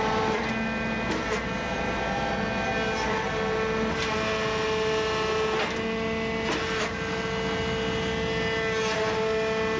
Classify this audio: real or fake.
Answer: real